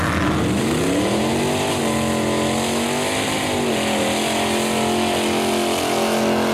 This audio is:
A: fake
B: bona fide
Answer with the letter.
B